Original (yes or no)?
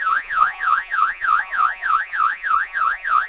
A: no